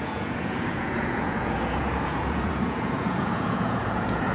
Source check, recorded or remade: remade